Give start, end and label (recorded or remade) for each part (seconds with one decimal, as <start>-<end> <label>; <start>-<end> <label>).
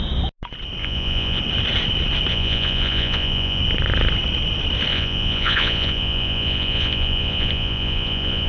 0.0-0.8 recorded; 0.8-1.4 remade; 1.4-2.3 recorded; 2.3-3.6 remade; 3.6-4.9 recorded; 4.9-8.5 remade